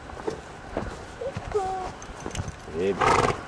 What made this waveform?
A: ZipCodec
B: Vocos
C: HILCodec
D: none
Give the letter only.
D